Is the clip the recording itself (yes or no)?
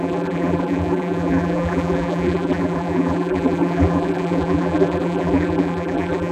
no